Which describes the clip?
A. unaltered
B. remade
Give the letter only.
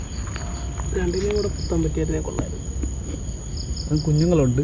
A